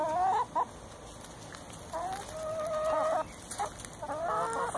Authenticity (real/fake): real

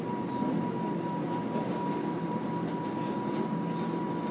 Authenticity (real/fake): real